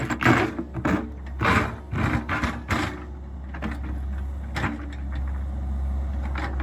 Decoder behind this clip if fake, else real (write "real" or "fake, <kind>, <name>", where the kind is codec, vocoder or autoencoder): real